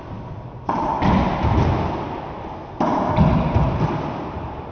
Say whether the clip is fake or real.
real